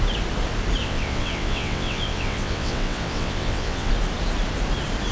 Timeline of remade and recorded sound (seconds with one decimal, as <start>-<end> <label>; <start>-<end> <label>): 0.0-0.8 recorded; 0.8-3.9 remade; 3.9-5.1 recorded